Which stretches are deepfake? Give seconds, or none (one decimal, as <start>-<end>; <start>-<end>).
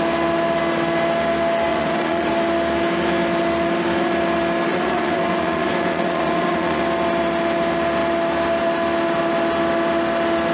1.7-2.3; 4.7-6.8